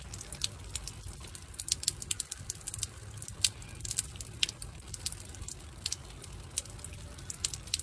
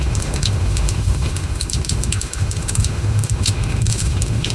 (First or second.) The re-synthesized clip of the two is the second